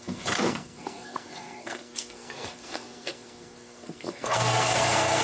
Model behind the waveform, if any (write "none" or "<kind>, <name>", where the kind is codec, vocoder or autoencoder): codec, SNAC